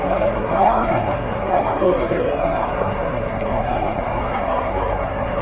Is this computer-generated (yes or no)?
yes